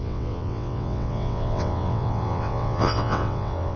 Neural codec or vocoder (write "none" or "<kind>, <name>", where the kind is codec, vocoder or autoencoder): vocoder, WaveNeXt